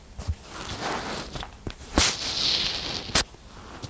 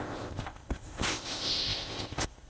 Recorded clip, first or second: first